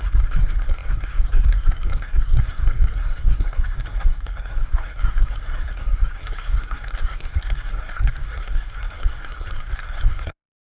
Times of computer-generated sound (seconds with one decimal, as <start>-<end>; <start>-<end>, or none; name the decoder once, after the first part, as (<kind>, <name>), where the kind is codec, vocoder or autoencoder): 0.0-10.7 (codec, SNAC)